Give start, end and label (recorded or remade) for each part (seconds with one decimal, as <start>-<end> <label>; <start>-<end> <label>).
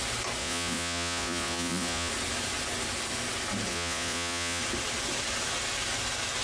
0.0-0.4 recorded; 0.4-2.1 remade; 2.1-3.7 recorded; 3.7-4.6 remade; 4.6-6.4 recorded